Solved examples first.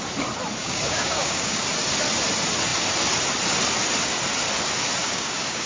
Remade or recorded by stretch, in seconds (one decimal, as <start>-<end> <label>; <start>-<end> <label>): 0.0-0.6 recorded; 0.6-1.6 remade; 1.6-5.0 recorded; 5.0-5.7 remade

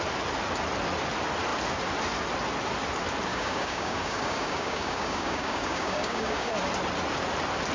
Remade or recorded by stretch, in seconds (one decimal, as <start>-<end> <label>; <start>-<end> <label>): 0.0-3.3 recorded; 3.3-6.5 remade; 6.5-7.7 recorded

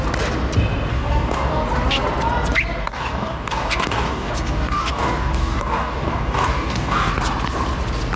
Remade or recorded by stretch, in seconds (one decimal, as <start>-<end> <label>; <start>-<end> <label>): 0.0-0.9 recorded; 0.9-1.6 remade; 1.6-2.8 recorded; 2.8-7.1 remade; 7.1-8.2 recorded